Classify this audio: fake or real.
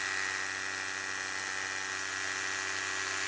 real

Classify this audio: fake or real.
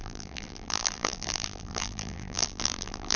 fake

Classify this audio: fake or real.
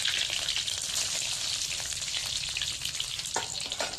real